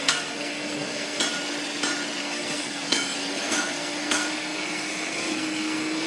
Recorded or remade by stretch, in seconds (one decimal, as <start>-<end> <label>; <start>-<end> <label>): 0.0-1.2 remade; 1.2-2.2 recorded; 2.2-6.1 remade